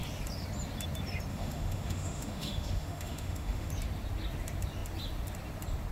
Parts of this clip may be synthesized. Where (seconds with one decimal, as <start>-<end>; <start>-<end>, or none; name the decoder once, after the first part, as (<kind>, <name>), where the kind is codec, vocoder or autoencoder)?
1.3-3.7 (autoencoder, DAC-VAE)